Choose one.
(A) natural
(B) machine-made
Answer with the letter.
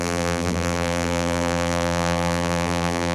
B